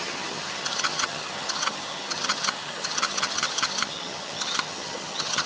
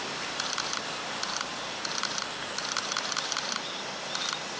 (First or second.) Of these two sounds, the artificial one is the first